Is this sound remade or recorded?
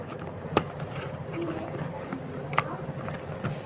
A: recorded